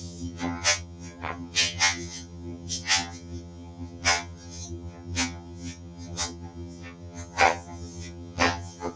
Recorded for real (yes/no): no